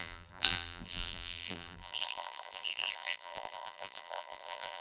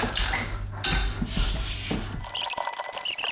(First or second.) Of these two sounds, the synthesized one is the first